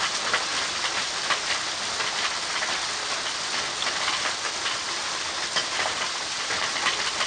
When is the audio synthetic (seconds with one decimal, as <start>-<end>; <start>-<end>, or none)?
5.6-6.7